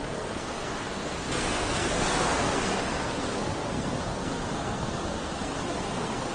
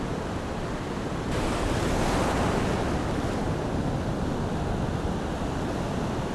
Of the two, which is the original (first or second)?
second